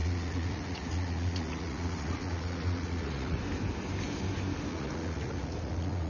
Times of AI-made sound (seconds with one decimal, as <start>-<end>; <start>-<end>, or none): 0.0-3.4; 4.7-6.1